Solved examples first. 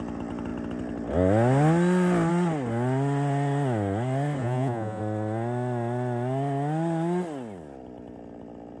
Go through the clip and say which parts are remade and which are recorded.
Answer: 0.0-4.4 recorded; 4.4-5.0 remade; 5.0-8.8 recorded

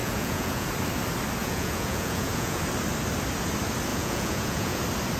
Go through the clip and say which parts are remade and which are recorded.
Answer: 0.0-0.7 remade; 0.7-1.4 recorded; 1.4-2.6 remade; 2.6-3.9 recorded; 3.9-4.8 remade; 4.8-5.2 recorded

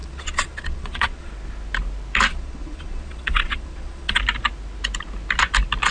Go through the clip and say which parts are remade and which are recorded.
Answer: 0.0-1.3 remade; 1.3-2.3 recorded; 2.3-4.2 remade; 4.2-5.9 recorded

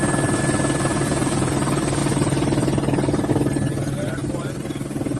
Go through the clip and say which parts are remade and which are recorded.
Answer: 0.0-0.9 recorded; 0.9-1.5 remade; 1.5-5.2 recorded

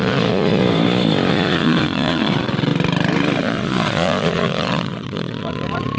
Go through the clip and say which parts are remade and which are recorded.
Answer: 0.0-0.6 remade; 0.6-1.3 recorded; 1.3-2.7 remade; 2.7-3.4 recorded; 3.4-6.0 remade

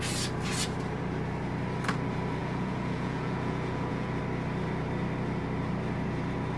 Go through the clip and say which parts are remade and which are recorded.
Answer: 0.0-2.4 recorded; 2.4-4.2 remade; 4.2-6.6 recorded

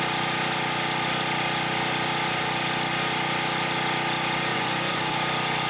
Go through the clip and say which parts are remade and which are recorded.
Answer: 0.0-4.5 recorded; 4.5-5.0 remade; 5.0-5.7 recorded

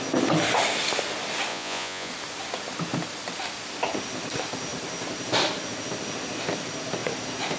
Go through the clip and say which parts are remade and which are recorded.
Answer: 0.0-1.5 recorded; 1.5-2.1 remade; 2.1-7.6 recorded